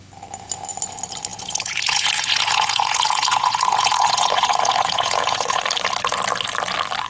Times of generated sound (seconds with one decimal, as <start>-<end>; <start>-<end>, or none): 1.3-5.6